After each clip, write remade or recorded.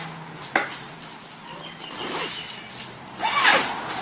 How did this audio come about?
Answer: recorded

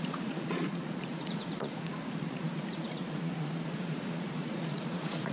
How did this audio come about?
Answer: remade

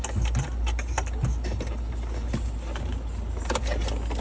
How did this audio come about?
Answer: recorded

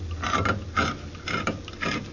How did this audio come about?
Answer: recorded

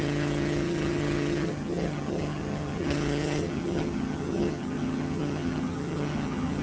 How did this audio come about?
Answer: remade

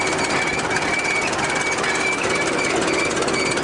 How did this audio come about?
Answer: recorded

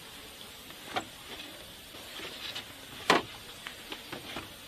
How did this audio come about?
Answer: recorded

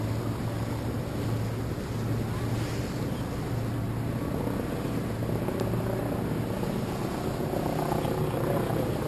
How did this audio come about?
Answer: recorded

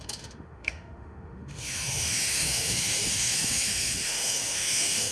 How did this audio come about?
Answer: remade